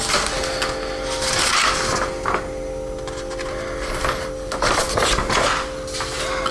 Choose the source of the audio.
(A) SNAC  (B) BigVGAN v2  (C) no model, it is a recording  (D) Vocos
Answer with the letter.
C